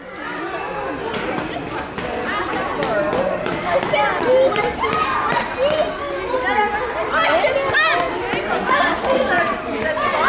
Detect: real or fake real